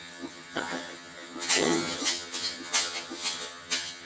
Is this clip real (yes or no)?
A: no